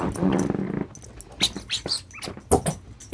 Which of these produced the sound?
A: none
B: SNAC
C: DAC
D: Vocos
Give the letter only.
A